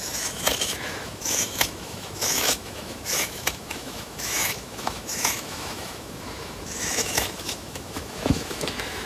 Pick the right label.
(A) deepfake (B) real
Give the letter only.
A